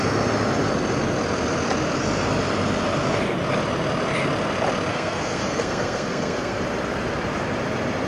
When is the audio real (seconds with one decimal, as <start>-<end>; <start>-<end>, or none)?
0.0-4.9; 6.6-8.1